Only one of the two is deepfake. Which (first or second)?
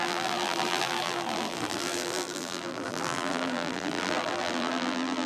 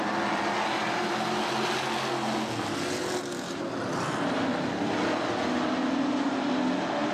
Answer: first